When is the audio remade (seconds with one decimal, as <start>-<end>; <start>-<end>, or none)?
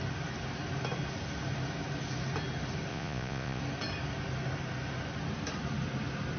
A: 2.9-3.6